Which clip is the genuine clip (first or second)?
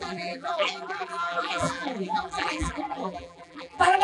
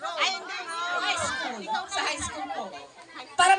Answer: second